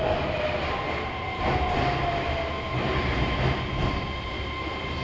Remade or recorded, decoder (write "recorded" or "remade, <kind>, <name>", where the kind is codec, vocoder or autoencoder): recorded